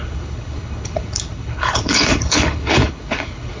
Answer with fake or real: fake